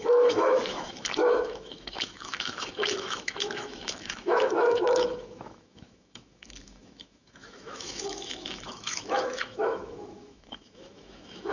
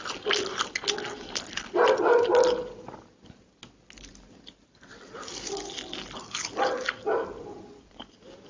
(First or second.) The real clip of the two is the second